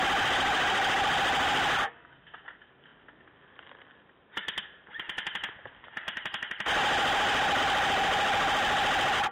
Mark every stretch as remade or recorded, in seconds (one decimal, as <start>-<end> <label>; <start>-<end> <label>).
0.0-9.3 recorded